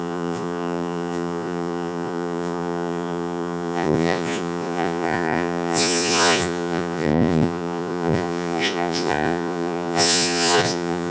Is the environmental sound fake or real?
fake